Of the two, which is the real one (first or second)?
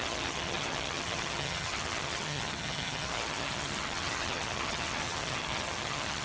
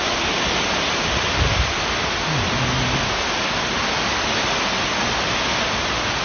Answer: second